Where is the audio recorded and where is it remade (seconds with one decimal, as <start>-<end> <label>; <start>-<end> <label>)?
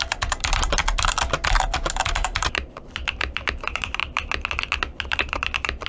0.0-0.8 remade; 0.8-2.7 recorded; 2.7-4.0 remade; 4.0-5.0 recorded; 5.0-5.9 remade